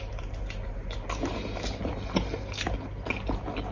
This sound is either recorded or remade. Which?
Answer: recorded